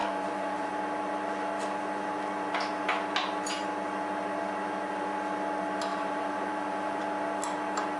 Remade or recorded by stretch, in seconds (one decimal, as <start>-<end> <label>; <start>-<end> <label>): 0.0-0.7 remade; 0.7-5.9 recorded; 5.9-7.0 remade; 7.0-8.0 recorded